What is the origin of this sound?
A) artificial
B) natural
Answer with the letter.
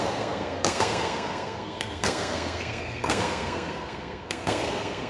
A